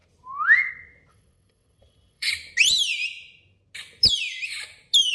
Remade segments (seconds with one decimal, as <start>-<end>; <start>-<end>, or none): 1.1-2.3